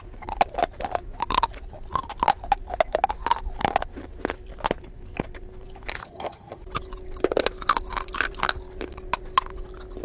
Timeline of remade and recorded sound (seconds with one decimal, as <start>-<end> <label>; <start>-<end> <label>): 0.0-6.0 recorded; 6.0-6.6 remade; 6.6-10.0 recorded